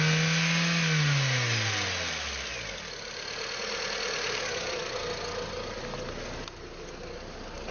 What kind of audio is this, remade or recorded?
recorded